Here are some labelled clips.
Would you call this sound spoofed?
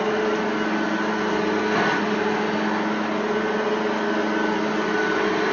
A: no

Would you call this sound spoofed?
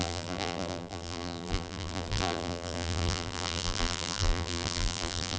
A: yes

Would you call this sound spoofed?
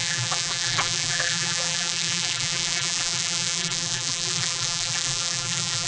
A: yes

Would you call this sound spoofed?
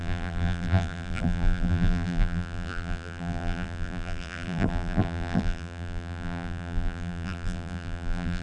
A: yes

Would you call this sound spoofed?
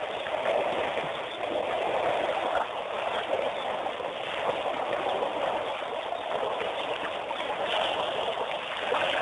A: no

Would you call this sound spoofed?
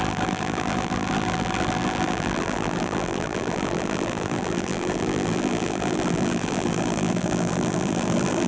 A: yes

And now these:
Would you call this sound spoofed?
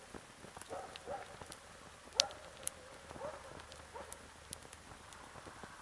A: no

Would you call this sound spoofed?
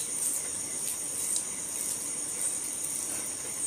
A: yes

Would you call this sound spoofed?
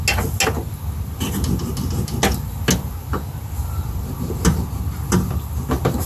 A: no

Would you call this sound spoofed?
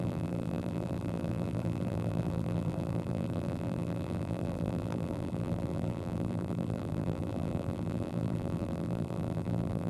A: yes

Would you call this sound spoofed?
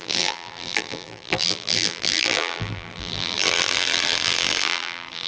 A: yes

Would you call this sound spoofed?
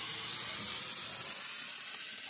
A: no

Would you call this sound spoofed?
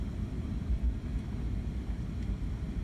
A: yes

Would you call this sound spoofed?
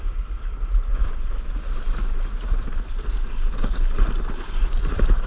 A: no